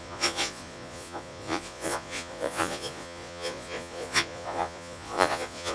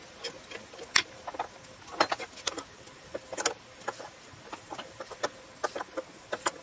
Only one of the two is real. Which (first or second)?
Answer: second